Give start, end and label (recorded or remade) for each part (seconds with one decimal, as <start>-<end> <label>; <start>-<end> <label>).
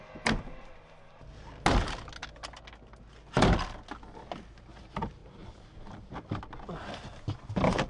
0.0-5.2 recorded; 5.2-6.4 remade; 6.4-7.9 recorded